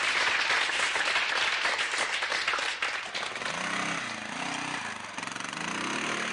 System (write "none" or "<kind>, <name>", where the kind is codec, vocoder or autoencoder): none